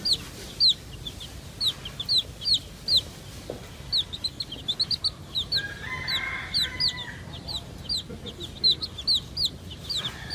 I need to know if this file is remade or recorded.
recorded